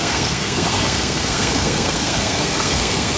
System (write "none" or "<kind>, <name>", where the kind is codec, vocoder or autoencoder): codec, SNAC